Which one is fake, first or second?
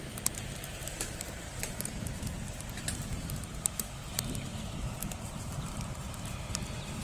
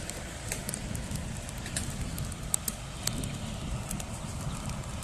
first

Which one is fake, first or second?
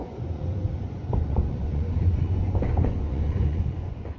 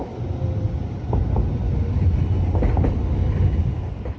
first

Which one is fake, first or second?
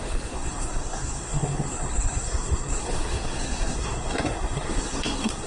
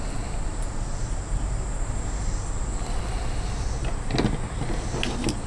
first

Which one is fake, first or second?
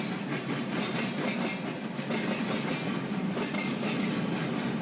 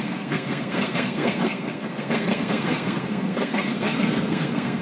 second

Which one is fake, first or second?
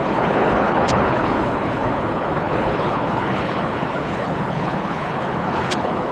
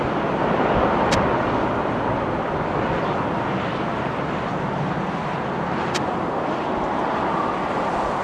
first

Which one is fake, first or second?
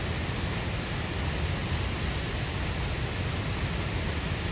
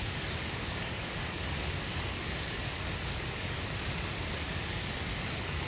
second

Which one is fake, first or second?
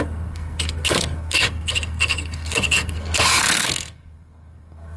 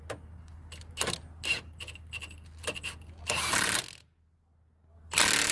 first